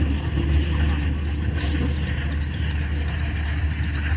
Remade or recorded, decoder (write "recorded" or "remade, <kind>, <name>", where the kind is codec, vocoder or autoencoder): recorded